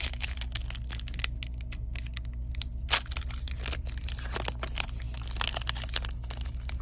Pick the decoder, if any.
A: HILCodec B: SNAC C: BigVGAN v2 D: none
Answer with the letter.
D